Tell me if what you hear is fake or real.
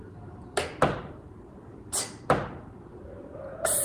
real